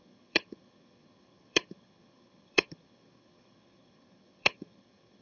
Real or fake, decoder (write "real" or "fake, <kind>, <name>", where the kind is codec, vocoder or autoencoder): fake, vocoder, HiFi-GAN